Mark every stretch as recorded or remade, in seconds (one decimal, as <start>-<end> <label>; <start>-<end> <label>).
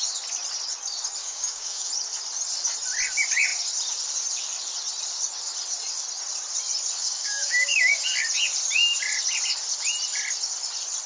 0.0-1.2 recorded; 1.2-1.9 remade; 1.9-7.0 recorded; 7.0-7.9 remade; 7.9-11.1 recorded